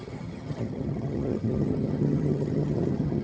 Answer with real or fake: fake